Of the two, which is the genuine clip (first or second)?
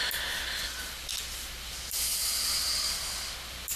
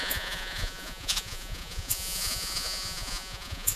first